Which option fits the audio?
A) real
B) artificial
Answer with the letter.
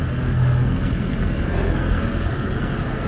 B